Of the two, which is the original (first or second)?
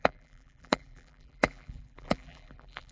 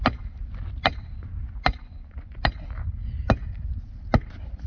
second